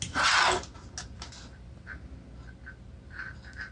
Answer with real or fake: real